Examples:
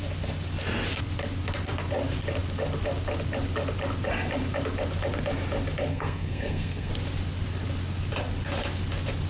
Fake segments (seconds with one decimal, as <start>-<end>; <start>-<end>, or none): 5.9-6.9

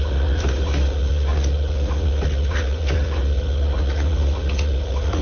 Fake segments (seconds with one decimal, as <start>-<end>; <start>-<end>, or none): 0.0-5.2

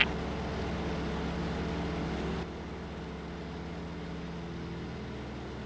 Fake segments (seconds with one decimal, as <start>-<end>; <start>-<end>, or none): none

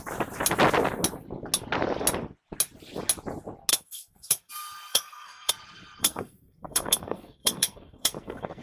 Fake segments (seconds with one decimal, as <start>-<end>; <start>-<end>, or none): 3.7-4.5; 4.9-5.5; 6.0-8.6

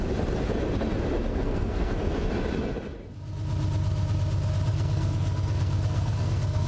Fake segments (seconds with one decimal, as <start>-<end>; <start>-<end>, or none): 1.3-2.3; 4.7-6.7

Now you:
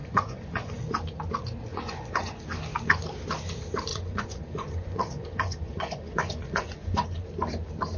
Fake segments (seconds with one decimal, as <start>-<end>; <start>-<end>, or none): 0.0-0.8; 1.7-2.3; 3.9-7.2

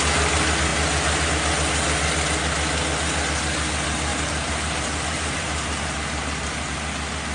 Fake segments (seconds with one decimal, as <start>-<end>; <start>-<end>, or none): 4.1-6.8